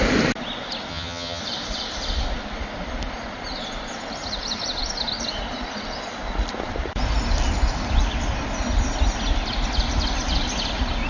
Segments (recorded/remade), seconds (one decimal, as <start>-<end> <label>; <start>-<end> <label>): 0.0-0.9 recorded; 0.9-1.4 remade; 1.4-11.1 recorded